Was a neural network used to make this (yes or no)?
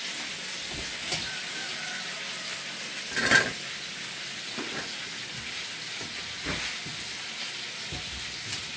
no